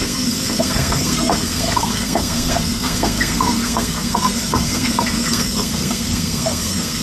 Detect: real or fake fake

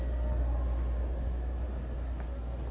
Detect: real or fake real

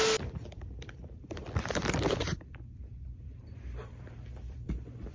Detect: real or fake fake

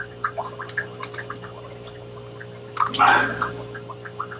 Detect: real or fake real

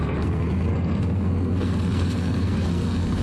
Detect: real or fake fake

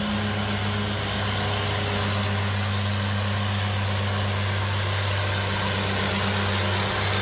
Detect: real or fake real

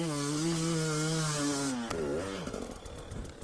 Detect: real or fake real